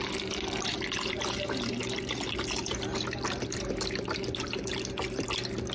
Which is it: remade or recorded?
recorded